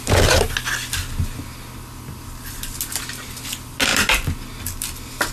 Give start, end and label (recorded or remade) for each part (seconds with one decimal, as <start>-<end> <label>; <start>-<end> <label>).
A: 0.0-5.3 recorded

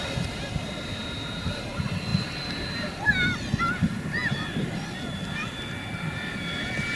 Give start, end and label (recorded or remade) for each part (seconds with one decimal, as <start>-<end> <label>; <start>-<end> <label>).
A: 0.0-7.0 recorded

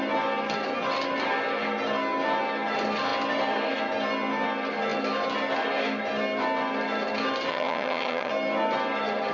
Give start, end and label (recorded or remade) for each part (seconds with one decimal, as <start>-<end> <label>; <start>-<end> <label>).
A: 0.0-7.5 recorded; 7.5-8.3 remade; 8.3-9.3 recorded

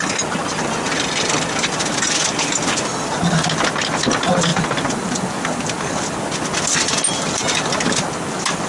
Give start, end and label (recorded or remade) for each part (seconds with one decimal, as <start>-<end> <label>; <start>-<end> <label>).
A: 0.0-4.5 recorded; 4.5-5.9 remade; 5.9-8.7 recorded

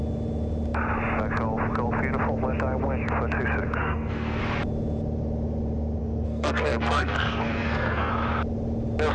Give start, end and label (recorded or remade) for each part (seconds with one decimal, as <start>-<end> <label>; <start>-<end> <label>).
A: 0.0-3.8 recorded; 3.8-4.4 remade; 4.4-6.0 recorded; 6.0-8.1 remade; 8.1-9.1 recorded

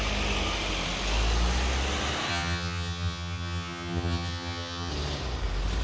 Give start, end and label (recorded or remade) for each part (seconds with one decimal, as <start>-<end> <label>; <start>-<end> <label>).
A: 0.0-2.3 recorded; 2.3-4.9 remade; 4.9-5.8 recorded

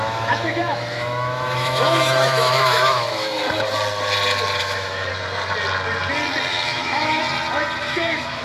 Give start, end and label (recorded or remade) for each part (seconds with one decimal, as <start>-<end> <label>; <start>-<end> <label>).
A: 0.0-3.4 remade; 3.4-4.6 recorded; 4.6-5.1 remade; 5.1-6.5 recorded; 6.5-7.2 remade; 7.2-7.8 recorded; 7.8-8.4 remade